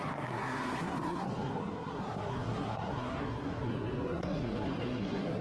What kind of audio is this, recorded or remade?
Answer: remade